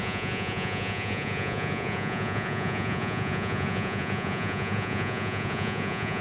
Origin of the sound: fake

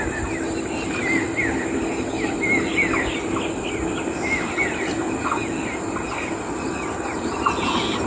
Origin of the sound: real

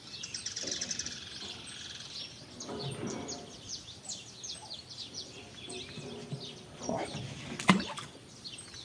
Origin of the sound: real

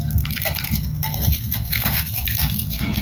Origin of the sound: fake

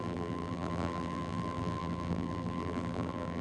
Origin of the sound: fake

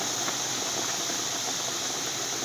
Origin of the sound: real